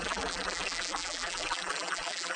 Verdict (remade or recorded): remade